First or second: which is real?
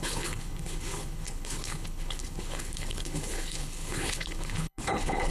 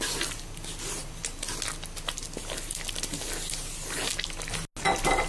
second